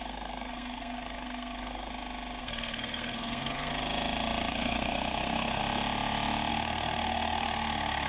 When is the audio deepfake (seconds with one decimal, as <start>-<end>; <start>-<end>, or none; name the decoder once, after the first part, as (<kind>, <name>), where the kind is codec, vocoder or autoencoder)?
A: 0.0-1.9 (codec, SNAC); 2.4-3.7; 4.5-5.6; 6.5-8.1